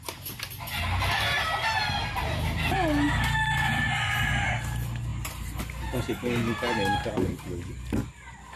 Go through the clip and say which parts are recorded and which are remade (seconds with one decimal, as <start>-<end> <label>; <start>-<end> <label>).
0.0-5.1 recorded; 5.1-5.6 remade; 5.6-8.6 recorded